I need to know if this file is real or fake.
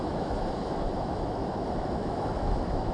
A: fake